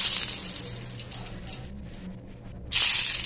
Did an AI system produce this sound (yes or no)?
no